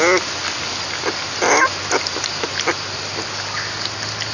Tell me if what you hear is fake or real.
real